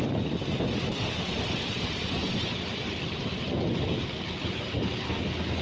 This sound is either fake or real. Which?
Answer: real